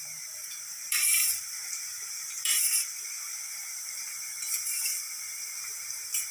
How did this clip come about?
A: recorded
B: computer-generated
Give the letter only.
B